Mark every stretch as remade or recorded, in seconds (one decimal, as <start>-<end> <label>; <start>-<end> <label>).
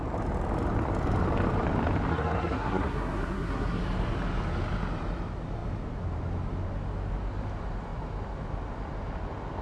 0.0-2.1 recorded; 2.1-3.8 remade; 3.8-9.6 recorded